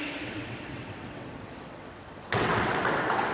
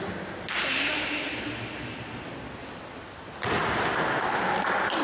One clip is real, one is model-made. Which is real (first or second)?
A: second